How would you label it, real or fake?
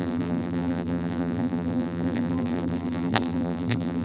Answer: fake